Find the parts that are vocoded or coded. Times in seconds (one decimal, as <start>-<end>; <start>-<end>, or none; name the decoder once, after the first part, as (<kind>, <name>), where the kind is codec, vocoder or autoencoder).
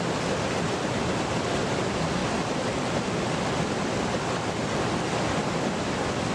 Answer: none